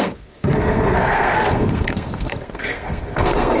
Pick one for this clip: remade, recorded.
remade